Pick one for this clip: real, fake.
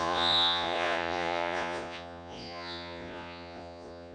fake